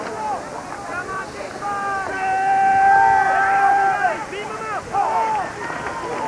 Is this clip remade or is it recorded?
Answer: recorded